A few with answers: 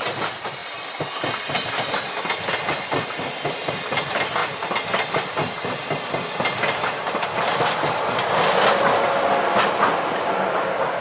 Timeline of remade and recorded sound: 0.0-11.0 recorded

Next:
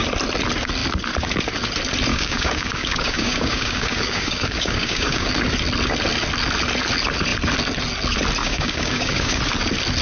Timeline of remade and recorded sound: 0.0-2.1 recorded; 2.1-5.3 remade; 5.3-8.4 recorded; 8.4-9.4 remade; 9.4-10.0 recorded

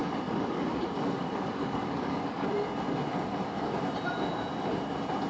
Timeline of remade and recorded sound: 0.0-2.5 remade; 2.5-3.1 recorded; 3.1-3.8 remade; 3.8-5.3 recorded